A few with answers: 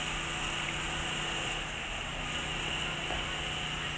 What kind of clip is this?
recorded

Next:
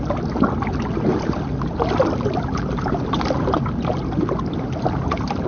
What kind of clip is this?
recorded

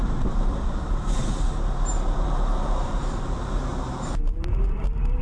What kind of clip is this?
remade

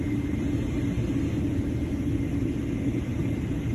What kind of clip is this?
recorded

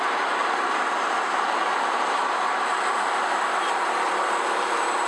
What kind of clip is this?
remade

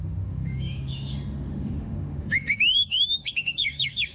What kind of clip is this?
remade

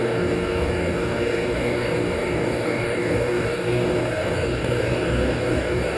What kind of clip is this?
remade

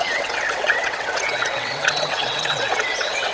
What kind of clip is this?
remade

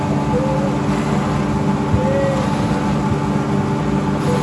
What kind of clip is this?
recorded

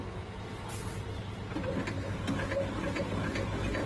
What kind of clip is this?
recorded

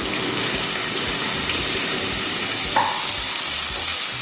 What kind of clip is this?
recorded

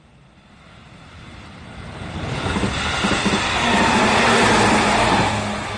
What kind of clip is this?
recorded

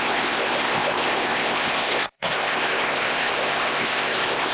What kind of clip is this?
remade